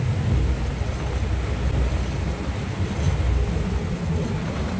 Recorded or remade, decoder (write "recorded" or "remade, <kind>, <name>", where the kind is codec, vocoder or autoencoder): recorded